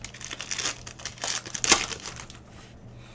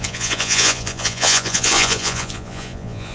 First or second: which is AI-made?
second